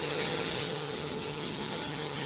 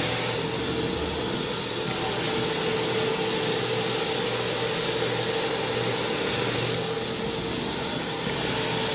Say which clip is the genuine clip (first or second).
second